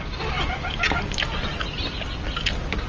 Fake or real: real